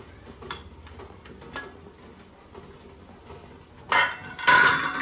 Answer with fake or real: real